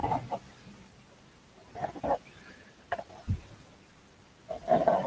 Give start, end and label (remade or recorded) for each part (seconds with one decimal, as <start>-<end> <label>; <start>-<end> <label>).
0.0-3.0 remade; 3.0-5.1 recorded